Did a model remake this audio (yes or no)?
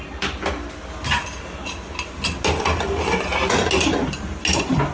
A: no